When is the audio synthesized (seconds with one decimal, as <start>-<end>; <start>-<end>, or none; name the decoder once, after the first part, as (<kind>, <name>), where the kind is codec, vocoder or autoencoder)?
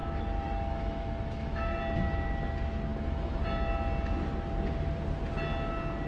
0.0-1.8 (autoencoder, DAC-VAE); 2.9-3.4